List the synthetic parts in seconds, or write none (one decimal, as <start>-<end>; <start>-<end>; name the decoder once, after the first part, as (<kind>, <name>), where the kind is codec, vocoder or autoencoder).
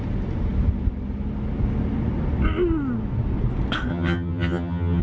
3.9-5.0 (vocoder, HiFi-GAN)